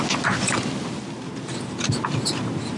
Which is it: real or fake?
real